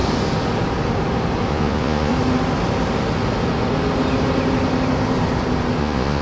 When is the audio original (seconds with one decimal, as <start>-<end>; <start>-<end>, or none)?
0.0-1.5; 2.1-5.8